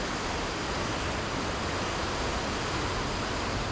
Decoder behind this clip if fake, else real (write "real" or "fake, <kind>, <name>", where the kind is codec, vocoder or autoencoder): real